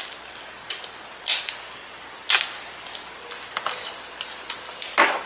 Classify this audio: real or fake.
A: real